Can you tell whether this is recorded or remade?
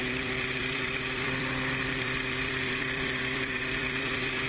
remade